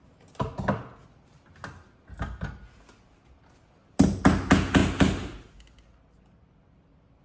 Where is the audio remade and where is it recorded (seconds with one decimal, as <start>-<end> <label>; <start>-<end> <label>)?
0.0-7.2 recorded